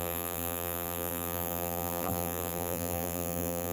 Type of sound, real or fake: fake